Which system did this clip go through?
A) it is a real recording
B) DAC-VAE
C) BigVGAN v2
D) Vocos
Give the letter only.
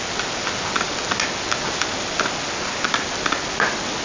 A